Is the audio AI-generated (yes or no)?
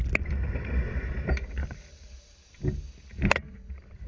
no